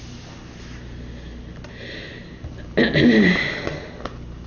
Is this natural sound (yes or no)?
yes